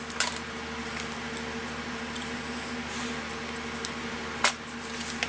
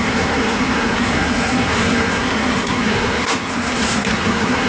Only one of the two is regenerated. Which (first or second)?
second